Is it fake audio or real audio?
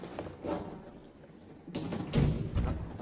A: real